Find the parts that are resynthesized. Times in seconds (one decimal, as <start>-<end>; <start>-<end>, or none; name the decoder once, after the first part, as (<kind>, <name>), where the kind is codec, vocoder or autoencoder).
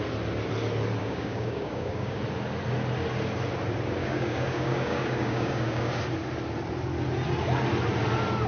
1.0-2.2 (codec, DAC); 4.0-6.0